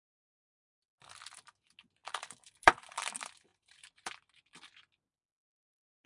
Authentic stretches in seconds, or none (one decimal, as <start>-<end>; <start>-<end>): 0.0-2.0; 3.1-3.5; 4.7-6.1